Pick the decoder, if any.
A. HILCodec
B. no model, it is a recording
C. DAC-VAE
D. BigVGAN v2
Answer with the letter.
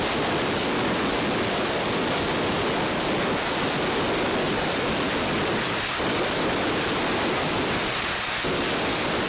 B